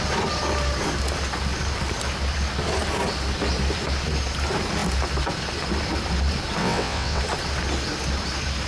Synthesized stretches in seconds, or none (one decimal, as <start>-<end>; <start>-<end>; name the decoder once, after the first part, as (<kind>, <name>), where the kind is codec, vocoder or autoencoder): 6.6-7.2 (vocoder, WaveNeXt)